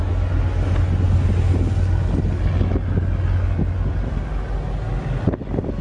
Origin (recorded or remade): recorded